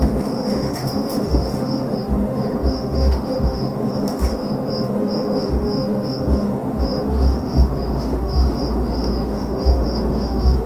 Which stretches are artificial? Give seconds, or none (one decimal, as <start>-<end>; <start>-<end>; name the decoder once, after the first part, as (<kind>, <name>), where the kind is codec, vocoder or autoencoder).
0.0-10.7 (autoencoder, DAC-VAE)